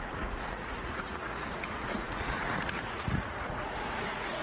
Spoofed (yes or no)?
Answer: yes